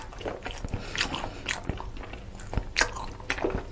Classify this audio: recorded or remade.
recorded